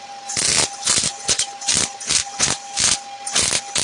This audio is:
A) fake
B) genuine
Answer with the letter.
B